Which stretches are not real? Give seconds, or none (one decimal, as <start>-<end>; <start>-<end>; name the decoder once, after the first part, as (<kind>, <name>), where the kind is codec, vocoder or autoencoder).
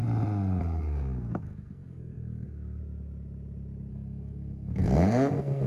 0.6-2.8 (codec, SNAC); 3.9-5.7